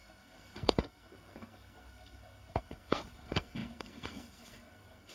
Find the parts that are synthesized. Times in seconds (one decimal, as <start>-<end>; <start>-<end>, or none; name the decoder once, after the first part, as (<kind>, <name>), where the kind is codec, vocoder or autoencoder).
0.0-5.1 (codec, SNAC)